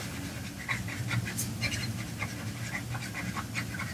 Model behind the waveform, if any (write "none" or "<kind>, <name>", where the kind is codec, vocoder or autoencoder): none